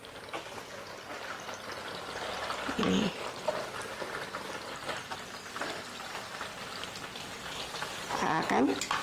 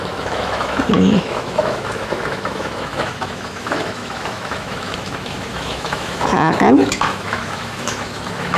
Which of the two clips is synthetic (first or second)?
second